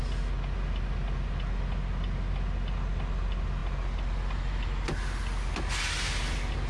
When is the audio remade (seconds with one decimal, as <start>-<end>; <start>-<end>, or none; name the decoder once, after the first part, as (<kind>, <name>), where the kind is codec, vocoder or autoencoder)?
none